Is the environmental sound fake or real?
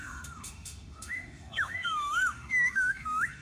fake